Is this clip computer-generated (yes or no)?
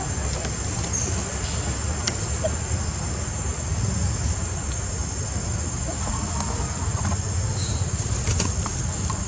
no